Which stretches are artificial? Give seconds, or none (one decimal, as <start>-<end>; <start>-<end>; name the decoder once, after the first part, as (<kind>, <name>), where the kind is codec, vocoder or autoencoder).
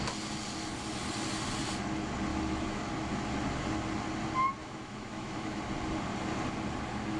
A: 2.3-2.9 (autoencoder, DAC-VAE); 4.6-5.6